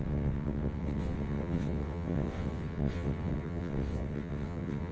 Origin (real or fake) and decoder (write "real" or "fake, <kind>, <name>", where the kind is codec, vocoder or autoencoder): fake, vocoder, WaveNeXt